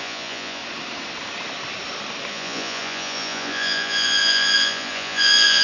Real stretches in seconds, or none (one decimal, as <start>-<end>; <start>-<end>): 0.6-2.3